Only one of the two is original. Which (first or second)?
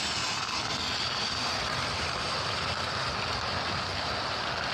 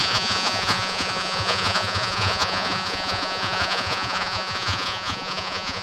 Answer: first